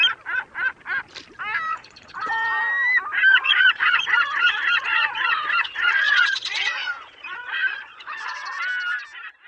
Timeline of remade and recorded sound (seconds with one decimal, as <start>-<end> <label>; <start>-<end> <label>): 0.0-1.7 recorded; 1.7-2.3 remade; 2.3-3.3 recorded; 3.3-8.6 remade; 8.6-9.5 recorded